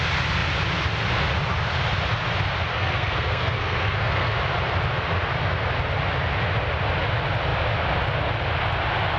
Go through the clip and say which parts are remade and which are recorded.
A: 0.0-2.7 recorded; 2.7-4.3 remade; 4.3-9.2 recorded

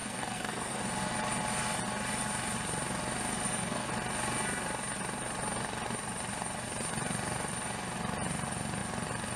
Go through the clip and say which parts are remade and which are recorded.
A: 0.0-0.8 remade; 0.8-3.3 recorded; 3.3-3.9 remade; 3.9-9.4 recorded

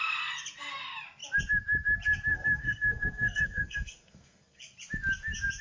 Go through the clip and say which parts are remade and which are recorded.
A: 0.0-2.3 recorded; 2.3-4.6 remade; 4.6-5.6 recorded